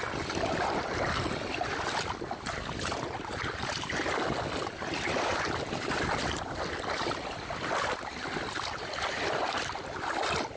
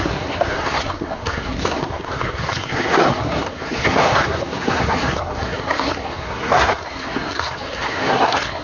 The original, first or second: first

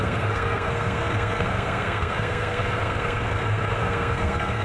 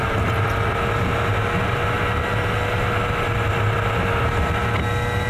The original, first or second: second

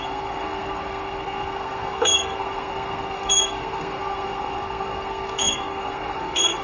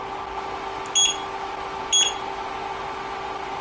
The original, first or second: second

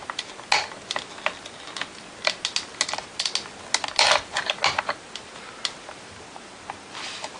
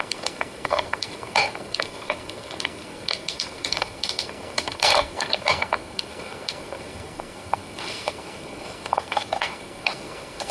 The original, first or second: first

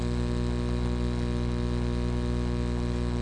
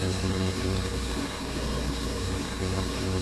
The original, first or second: first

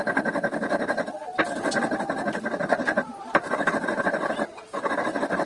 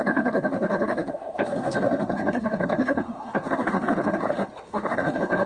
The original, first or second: first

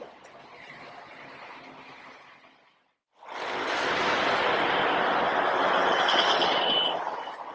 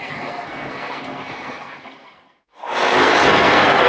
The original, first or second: first